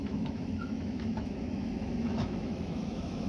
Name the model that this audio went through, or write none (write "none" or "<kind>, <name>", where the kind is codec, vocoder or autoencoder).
autoencoder, DAC-VAE